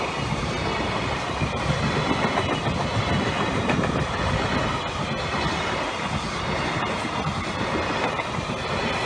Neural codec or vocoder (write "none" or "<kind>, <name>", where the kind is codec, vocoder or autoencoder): none